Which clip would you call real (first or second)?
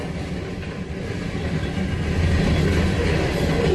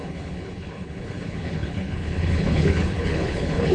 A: first